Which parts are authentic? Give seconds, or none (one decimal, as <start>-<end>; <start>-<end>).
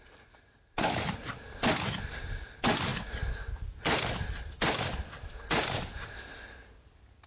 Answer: 0.0-7.3